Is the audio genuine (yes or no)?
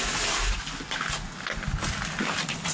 yes